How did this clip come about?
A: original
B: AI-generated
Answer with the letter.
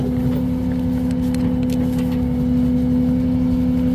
A